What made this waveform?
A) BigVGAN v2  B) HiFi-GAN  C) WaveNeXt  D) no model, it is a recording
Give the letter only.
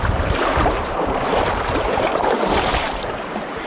A